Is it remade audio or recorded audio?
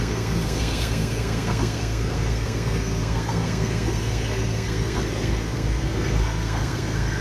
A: remade